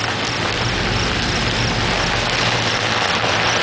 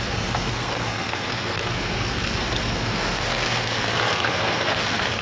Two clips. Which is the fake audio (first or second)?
second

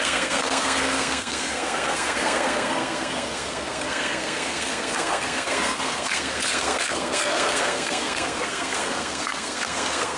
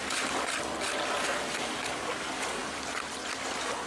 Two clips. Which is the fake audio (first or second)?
first